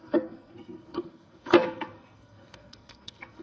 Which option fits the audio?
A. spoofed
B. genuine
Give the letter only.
A